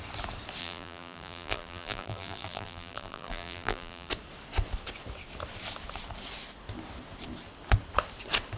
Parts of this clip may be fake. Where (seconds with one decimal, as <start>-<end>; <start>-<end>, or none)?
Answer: 0.6-4.1